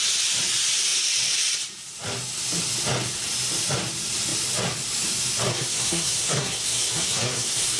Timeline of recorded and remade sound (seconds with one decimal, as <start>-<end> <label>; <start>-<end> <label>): 0.0-5.5 recorded; 5.5-7.8 remade